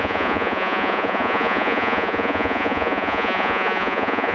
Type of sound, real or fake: fake